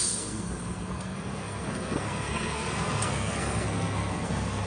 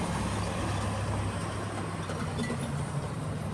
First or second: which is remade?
first